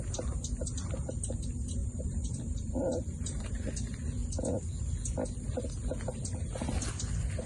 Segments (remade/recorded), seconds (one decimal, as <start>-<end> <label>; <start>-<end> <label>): 0.0-1.8 recorded; 1.8-3.5 remade; 3.5-7.5 recorded

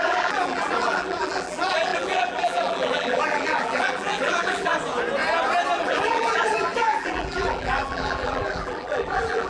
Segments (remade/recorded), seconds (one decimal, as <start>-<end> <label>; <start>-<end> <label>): 0.0-4.7 remade; 4.7-5.8 recorded; 5.8-9.5 remade

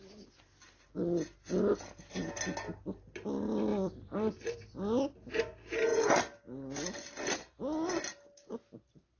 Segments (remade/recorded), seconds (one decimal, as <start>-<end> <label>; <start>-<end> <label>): 0.0-3.7 recorded; 3.7-5.4 remade; 5.4-8.1 recorded; 8.1-9.2 remade

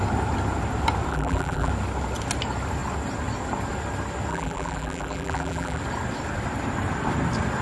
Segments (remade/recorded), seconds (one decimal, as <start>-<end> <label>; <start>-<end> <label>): 0.0-1.1 recorded; 1.1-1.7 remade; 1.7-4.3 recorded; 4.3-5.8 remade; 5.8-7.6 recorded

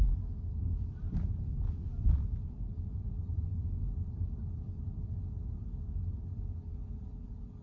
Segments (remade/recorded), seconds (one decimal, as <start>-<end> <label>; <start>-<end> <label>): 0.0-3.8 remade; 3.8-6.9 recorded; 6.9-7.6 remade